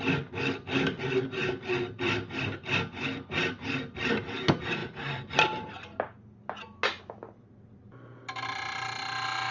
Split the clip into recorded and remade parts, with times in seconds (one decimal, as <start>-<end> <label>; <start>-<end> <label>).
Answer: 0.0-9.5 recorded